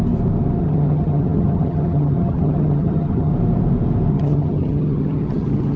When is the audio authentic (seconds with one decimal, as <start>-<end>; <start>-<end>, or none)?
0.0-0.6; 3.3-4.1